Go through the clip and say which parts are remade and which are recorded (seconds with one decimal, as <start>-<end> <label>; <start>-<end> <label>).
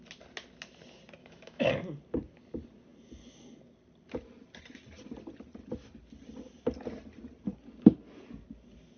0.0-1.2 recorded; 1.2-1.7 remade; 1.7-9.0 recorded